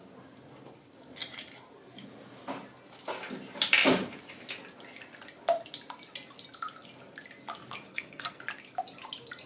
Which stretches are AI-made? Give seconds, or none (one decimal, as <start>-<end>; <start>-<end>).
7.9-8.4